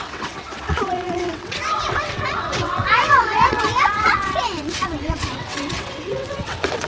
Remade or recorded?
remade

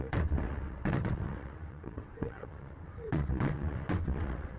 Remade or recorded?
remade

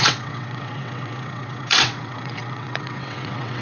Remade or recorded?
remade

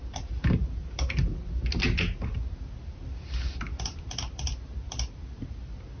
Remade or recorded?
recorded